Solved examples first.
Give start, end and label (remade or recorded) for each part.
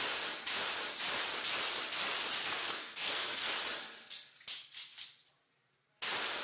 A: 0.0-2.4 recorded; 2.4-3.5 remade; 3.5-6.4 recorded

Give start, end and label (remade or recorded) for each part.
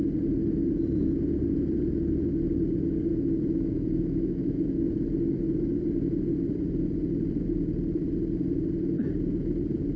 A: 0.0-3.1 recorded; 3.1-4.9 remade; 4.9-10.0 recorded